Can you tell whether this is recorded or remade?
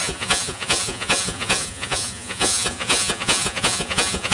remade